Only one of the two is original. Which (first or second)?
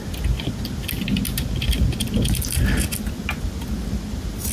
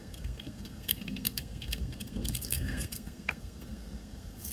first